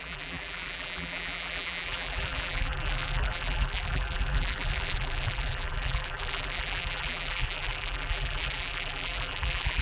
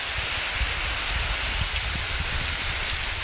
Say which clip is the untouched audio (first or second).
second